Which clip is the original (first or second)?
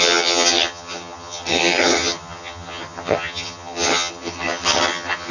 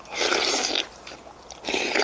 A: second